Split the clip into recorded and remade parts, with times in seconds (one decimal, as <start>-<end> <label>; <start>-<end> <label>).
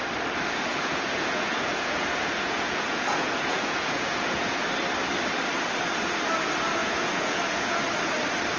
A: 0.0-0.7 recorded; 0.7-4.6 remade; 4.6-6.8 recorded; 6.8-7.8 remade; 7.8-8.6 recorded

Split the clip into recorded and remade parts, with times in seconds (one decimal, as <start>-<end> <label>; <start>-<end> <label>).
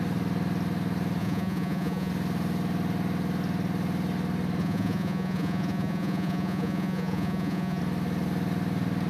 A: 0.0-1.2 recorded; 1.2-2.1 remade; 2.1-4.6 recorded; 4.6-7.8 remade; 7.8-9.1 recorded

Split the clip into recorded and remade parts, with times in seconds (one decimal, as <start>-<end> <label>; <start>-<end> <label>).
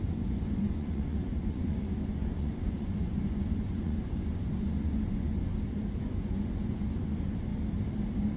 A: 0.0-5.5 remade; 5.5-6.0 recorded; 6.0-7.5 remade; 7.5-8.4 recorded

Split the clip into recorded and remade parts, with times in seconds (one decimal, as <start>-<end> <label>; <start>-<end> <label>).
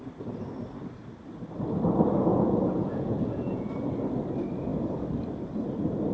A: 0.0-2.3 recorded; 2.3-3.7 remade; 3.7-6.1 recorded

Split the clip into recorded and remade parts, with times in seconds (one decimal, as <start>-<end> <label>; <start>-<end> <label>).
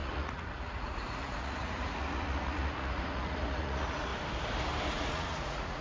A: 0.0-4.1 remade; 4.1-4.9 recorded; 4.9-5.8 remade